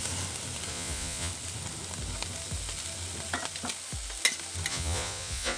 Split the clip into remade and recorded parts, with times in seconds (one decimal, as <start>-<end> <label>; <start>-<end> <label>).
0.0-0.7 recorded; 0.7-1.3 remade; 1.3-4.7 recorded; 4.7-5.6 remade